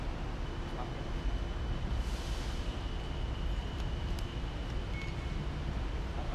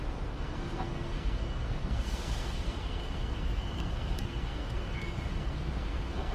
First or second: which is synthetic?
second